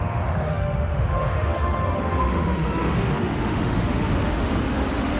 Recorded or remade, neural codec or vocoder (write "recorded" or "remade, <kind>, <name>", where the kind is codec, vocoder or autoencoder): remade, autoencoder, DAC-VAE